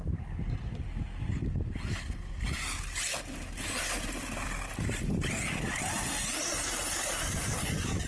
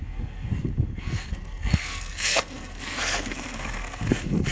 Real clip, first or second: first